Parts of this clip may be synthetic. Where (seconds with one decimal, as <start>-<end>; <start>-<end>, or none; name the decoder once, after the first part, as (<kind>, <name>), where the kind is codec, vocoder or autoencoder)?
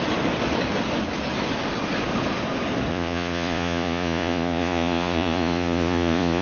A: 2.9-6.4 (vocoder, Vocos)